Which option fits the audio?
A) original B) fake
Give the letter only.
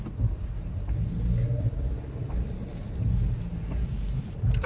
A